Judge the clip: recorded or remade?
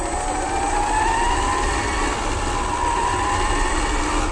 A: recorded